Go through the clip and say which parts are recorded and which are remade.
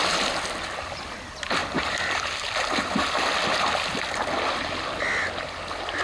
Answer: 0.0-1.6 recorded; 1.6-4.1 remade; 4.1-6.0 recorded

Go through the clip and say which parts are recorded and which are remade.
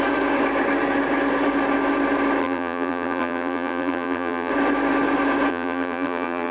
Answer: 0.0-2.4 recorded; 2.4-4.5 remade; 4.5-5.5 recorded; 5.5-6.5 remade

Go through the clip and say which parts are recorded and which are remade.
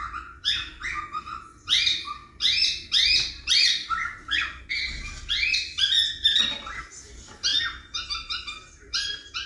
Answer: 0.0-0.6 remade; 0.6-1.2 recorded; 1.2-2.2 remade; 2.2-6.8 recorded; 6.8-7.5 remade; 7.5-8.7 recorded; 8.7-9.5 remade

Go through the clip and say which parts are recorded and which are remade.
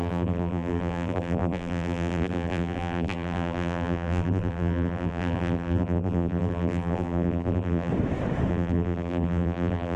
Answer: 0.0-7.9 remade; 7.9-8.5 recorded; 8.5-10.0 remade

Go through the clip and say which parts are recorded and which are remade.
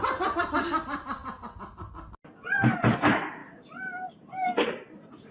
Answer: 0.0-1.2 recorded; 1.2-1.9 remade; 1.9-3.4 recorded; 3.4-4.1 remade; 4.1-5.3 recorded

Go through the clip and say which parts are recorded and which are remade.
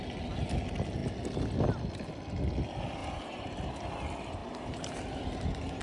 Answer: 0.0-3.0 recorded; 3.0-3.7 remade; 3.7-4.4 recorded; 4.4-5.8 remade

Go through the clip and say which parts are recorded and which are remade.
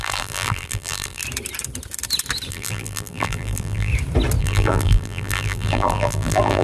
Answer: 0.0-1.2 remade; 1.2-2.5 recorded; 2.5-3.9 remade; 3.9-4.4 recorded; 4.4-6.6 remade